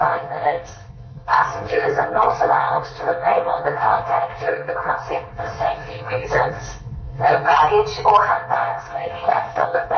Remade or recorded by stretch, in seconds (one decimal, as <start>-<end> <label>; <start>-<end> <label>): 0.0-7.6 remade; 7.6-8.3 recorded; 8.3-10.0 remade